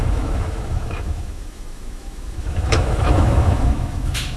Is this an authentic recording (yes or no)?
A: no